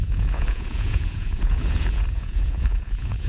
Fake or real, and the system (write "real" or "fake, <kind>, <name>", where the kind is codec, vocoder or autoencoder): fake, vocoder, Vocos